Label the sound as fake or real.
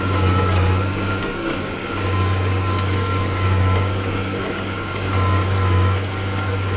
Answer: fake